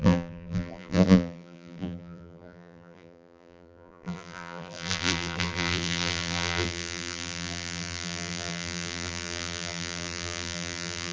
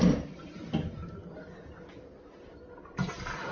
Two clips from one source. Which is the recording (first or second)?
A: second